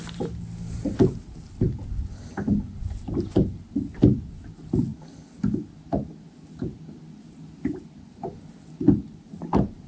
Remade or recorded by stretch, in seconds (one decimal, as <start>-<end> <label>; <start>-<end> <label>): 0.0-9.9 recorded